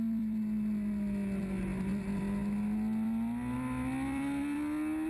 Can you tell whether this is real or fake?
real